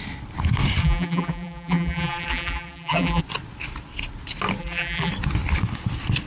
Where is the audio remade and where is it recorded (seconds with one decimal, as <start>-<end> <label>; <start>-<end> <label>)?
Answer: 0.0-0.8 recorded; 0.8-3.2 remade; 3.2-4.6 recorded; 4.6-5.1 remade; 5.1-6.3 recorded